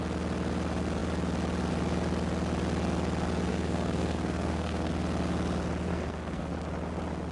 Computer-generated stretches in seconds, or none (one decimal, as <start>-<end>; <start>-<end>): 3.5-4.9; 5.9-6.5